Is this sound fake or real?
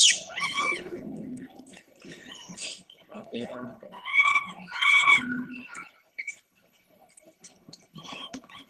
fake